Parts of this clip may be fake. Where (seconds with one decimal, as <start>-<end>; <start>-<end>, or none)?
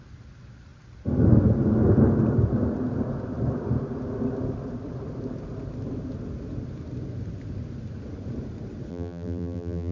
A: 8.9-9.9